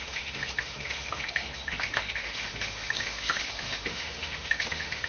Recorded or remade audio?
remade